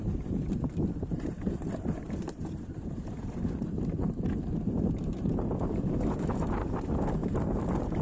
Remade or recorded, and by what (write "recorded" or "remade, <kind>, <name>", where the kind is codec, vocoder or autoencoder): remade, vocoder, BigVGAN v2